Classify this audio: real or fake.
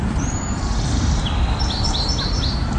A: fake